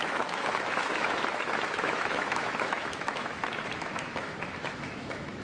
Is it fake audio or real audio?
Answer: fake